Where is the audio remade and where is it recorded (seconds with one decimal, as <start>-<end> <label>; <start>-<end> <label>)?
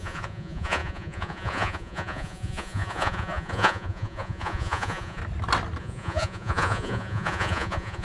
0.0-5.2 remade; 5.2-5.8 recorded; 5.8-8.0 remade